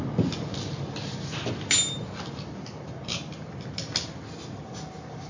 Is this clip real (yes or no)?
yes